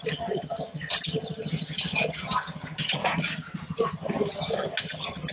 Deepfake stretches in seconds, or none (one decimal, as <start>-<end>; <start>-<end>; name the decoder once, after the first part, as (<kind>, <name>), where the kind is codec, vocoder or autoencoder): 0.0-3.0 (vocoder, HiFi-GAN); 4.8-5.3